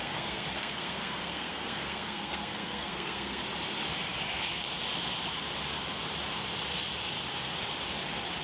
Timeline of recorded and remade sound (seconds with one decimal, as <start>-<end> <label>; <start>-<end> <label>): 0.0-3.4 remade; 3.4-8.4 recorded